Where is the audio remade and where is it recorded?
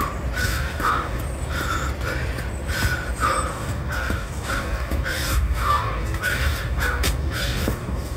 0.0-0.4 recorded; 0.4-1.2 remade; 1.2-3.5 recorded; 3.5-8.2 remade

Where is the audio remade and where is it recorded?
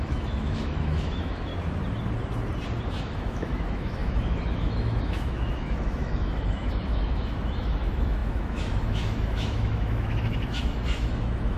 0.0-1.5 remade; 1.5-2.9 recorded; 2.9-11.6 remade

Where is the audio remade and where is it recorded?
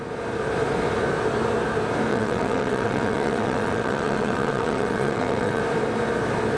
0.0-2.1 recorded; 2.1-5.6 remade; 5.6-6.6 recorded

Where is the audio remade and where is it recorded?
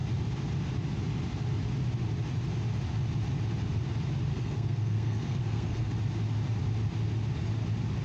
0.0-4.3 recorded; 4.3-5.9 remade; 5.9-8.0 recorded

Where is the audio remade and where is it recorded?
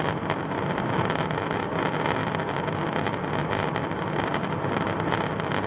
0.0-5.7 recorded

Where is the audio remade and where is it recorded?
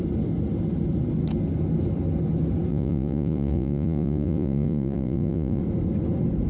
0.0-2.7 recorded; 2.7-5.6 remade; 5.6-6.5 recorded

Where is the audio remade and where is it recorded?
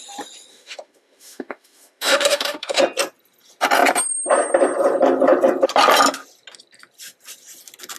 0.0-0.5 recorded; 0.5-2.8 remade; 2.8-8.0 recorded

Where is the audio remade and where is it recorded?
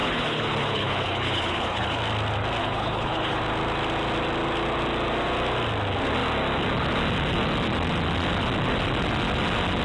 0.0-2.0 remade; 2.0-2.6 recorded; 2.6-3.4 remade; 3.4-9.8 recorded